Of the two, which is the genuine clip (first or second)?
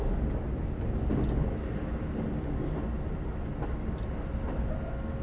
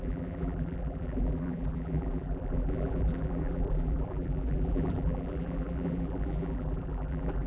first